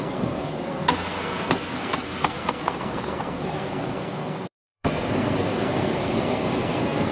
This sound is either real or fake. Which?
fake